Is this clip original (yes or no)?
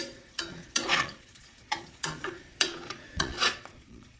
no